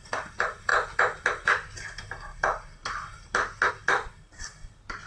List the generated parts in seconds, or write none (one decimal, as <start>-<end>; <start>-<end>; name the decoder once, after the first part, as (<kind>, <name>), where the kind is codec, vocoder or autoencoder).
0.0-0.7 (vocoder, BigVGAN v2); 3.7-5.1